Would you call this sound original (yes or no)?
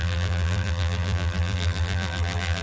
no